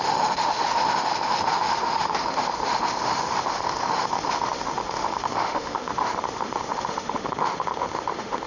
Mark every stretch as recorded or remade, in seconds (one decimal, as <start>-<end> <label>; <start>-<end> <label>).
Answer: 0.0-8.5 remade